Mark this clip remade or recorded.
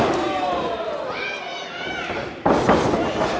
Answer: recorded